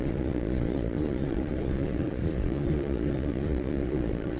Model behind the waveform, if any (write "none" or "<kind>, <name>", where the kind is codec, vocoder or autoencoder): vocoder, Vocos